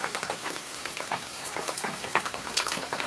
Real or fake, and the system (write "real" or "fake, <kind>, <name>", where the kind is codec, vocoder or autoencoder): fake, codec, SNAC